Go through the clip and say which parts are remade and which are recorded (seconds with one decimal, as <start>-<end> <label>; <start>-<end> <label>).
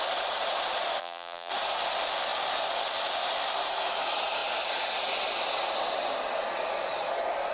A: 0.0-1.0 recorded; 1.0-1.5 remade; 1.5-7.5 recorded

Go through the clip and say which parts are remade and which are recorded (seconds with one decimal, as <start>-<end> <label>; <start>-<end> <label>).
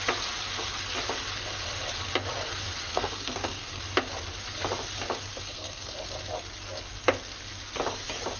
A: 0.0-2.9 recorded; 2.9-3.8 remade; 3.8-5.3 recorded; 5.3-5.9 remade; 5.9-8.4 recorded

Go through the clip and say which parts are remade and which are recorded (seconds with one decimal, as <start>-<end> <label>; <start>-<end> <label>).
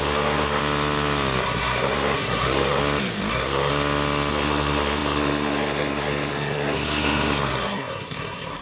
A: 0.0-0.6 remade; 0.6-1.4 recorded; 1.4-2.8 remade; 2.8-3.3 recorded; 3.3-3.7 remade; 3.7-4.3 recorded; 4.3-8.6 remade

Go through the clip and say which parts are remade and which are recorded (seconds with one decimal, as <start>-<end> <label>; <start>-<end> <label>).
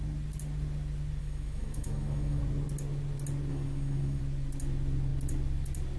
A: 0.0-1.2 recorded; 1.2-2.4 remade; 2.4-3.5 recorded; 3.5-4.2 remade; 4.2-6.0 recorded